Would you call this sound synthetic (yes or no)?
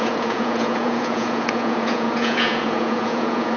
yes